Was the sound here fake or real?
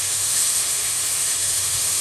fake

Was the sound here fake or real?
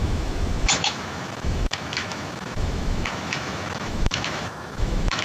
fake